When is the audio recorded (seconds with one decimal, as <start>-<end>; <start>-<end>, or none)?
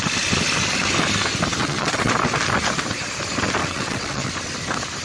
0.0-1.6; 2.1-3.6; 4.3-5.0